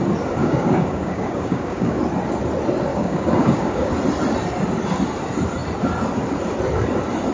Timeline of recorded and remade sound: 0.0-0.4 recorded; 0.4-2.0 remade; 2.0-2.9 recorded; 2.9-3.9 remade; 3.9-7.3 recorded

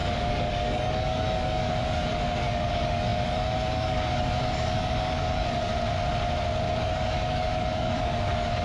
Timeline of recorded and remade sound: 0.0-5.7 remade; 5.7-6.7 recorded; 6.7-8.6 remade

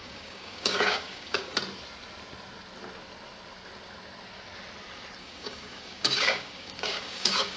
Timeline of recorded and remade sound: 0.0-1.6 remade; 1.6-5.2 recorded; 5.2-7.6 remade

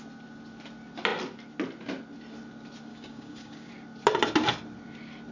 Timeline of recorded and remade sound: 0.0-2.9 recorded; 2.9-3.7 remade; 3.7-5.3 recorded

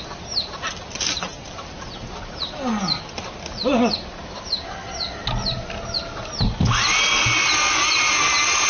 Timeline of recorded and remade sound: 0.0-8.7 recorded

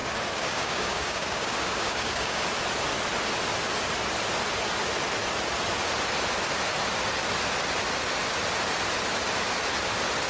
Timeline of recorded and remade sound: 0.0-2.4 remade; 2.4-10.3 recorded